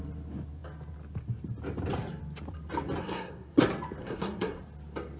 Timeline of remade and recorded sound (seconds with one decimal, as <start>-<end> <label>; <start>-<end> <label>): 0.0-3.0 recorded; 3.0-3.6 remade; 3.6-4.0 recorded; 4.0-4.6 remade; 4.6-5.2 recorded